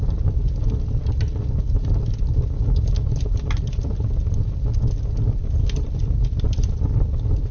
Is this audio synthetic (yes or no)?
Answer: no